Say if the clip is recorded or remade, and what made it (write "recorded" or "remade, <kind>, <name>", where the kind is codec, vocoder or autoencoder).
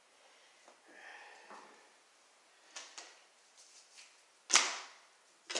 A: recorded